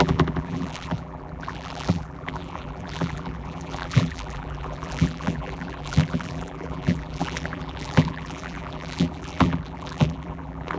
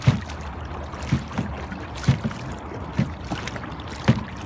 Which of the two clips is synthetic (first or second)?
first